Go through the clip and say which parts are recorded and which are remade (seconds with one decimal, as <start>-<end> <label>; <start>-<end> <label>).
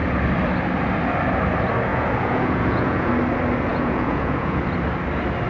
0.0-1.9 recorded; 1.9-3.1 remade; 3.1-3.7 recorded; 3.7-4.6 remade; 4.6-5.5 recorded